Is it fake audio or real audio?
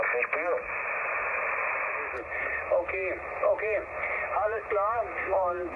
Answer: real